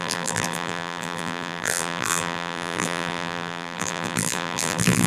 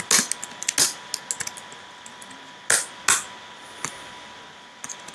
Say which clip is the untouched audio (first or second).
second